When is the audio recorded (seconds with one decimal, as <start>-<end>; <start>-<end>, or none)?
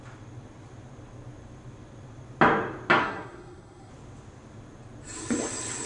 0.0-3.0; 3.9-5.9